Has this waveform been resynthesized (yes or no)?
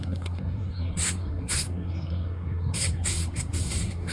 yes